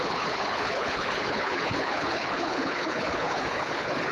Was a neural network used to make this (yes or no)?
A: yes